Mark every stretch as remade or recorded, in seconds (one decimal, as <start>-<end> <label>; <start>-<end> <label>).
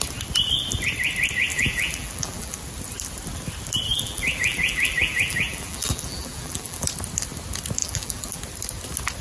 0.0-1.5 recorded; 1.5-2.6 remade; 2.6-3.9 recorded; 3.9-6.8 remade; 6.8-7.8 recorded; 7.8-8.4 remade; 8.4-9.2 recorded